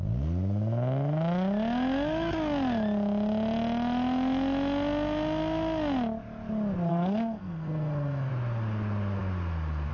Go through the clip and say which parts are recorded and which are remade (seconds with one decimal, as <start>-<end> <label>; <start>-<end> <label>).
0.0-6.9 recorded; 6.9-8.3 remade; 8.3-9.9 recorded